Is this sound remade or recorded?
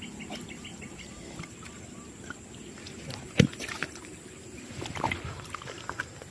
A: recorded